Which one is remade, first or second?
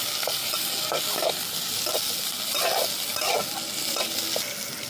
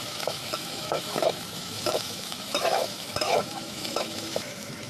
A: second